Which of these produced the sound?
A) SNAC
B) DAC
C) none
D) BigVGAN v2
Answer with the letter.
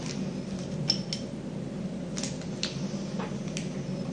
C